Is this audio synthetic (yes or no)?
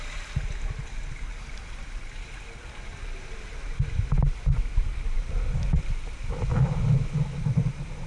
no